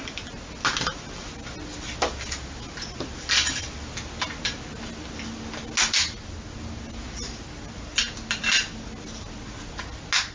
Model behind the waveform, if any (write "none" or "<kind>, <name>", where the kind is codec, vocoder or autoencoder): none